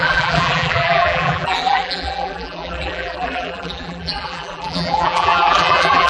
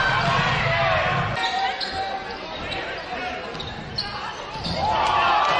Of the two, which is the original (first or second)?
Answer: second